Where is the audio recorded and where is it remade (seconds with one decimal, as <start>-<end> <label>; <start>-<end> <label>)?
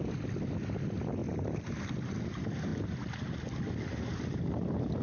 0.0-5.0 recorded